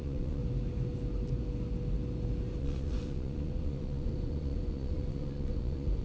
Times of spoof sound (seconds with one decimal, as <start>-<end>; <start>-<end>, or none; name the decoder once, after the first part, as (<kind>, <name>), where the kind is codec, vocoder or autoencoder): 0.0-0.4 (vocoder, Vocos); 2.6-6.0